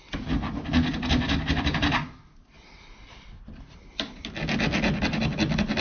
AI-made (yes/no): no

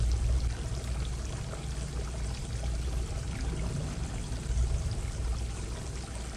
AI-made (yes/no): no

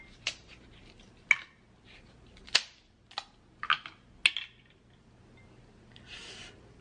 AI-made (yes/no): no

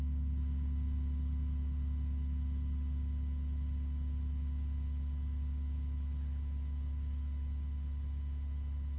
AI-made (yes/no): no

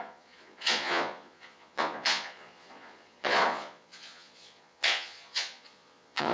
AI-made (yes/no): yes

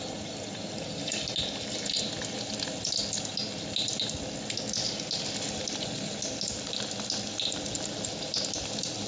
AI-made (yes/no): no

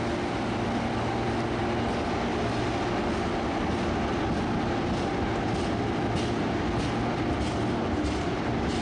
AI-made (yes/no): no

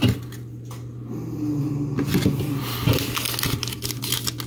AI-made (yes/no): no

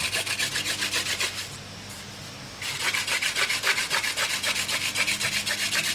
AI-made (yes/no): no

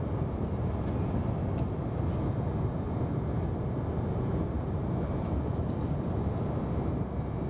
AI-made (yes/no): no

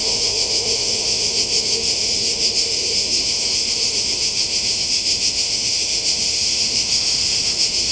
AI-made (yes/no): yes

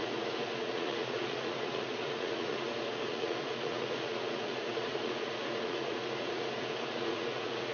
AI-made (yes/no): yes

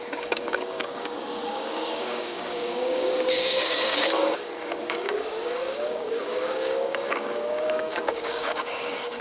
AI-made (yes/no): yes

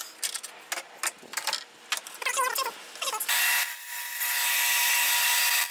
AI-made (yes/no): no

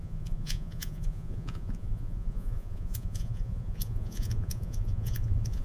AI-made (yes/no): yes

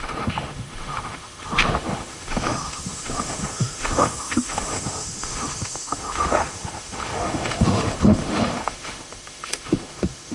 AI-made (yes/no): yes